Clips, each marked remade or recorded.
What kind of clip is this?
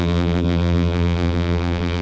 remade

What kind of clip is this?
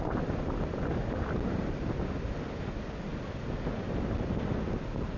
recorded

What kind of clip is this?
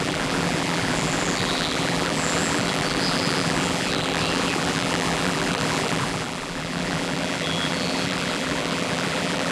remade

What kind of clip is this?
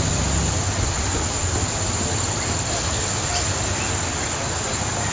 recorded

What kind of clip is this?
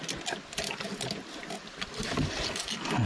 recorded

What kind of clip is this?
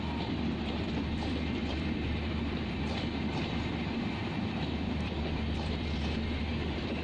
remade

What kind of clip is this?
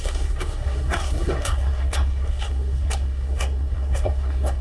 remade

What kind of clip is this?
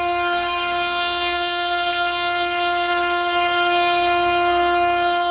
remade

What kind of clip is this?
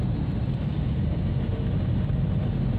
recorded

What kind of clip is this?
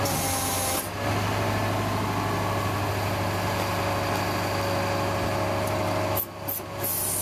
recorded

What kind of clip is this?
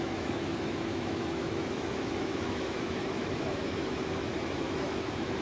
remade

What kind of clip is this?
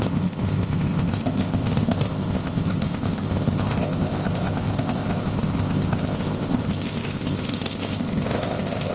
remade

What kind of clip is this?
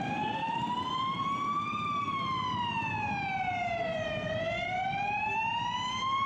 recorded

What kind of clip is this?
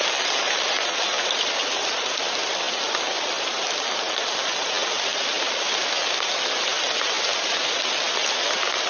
recorded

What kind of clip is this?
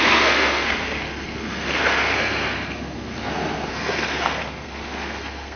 remade